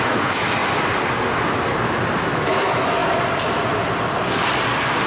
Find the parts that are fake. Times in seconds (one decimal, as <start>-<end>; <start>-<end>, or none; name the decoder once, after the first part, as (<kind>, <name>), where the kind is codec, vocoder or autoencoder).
0.0-0.6 (autoencoder, DAC-VAE); 2.2-3.0